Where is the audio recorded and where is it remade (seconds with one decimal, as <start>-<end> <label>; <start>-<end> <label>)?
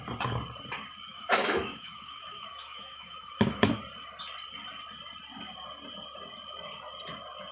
0.0-1.1 recorded; 1.1-3.8 remade; 3.8-7.5 recorded